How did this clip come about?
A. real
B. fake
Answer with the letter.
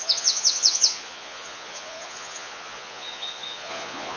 B